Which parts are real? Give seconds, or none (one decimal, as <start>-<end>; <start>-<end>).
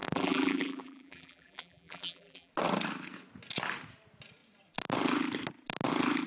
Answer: 2.5-6.3